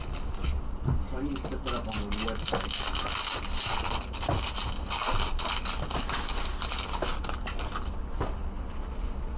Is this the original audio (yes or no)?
yes